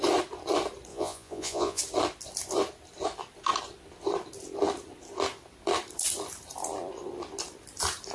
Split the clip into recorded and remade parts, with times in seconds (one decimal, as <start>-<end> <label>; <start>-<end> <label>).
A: 0.0-0.9 recorded; 0.9-1.8 remade; 1.8-8.1 recorded